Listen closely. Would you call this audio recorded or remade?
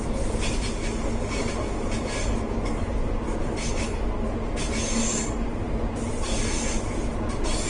recorded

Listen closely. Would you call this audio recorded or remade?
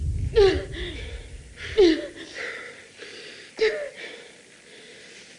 recorded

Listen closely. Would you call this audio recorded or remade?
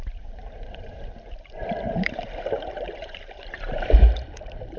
remade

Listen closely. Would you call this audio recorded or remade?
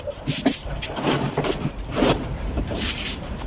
remade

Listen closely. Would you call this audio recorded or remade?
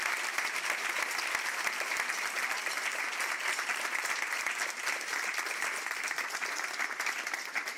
remade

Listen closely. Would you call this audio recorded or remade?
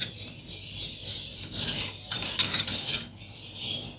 recorded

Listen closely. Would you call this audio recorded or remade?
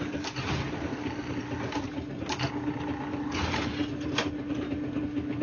recorded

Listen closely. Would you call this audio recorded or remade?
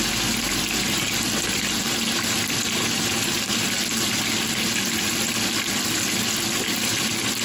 recorded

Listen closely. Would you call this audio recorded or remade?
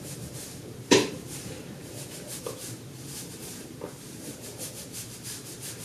remade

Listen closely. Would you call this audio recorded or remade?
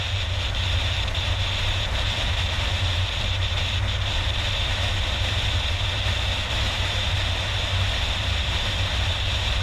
recorded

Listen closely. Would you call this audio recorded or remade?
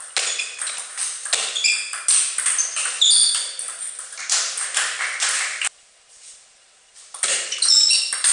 recorded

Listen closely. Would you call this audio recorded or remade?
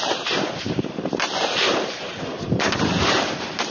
remade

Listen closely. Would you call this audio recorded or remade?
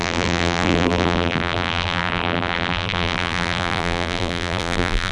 remade